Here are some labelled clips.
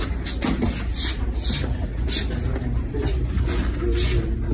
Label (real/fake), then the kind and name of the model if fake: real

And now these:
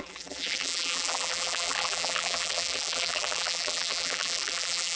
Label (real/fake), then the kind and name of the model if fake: fake, vocoder, BigVGAN v2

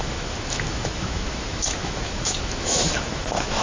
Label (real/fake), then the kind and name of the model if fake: fake, autoencoder, DAC-VAE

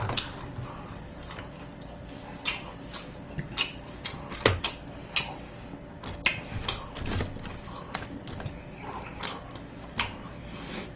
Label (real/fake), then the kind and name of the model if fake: real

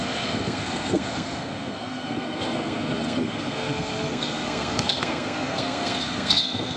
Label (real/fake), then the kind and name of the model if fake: fake, codec, SNAC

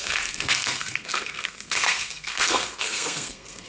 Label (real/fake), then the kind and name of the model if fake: fake, codec, SNAC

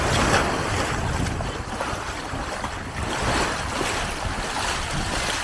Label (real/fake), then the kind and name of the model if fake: real